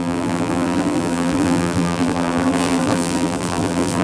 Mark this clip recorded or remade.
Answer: remade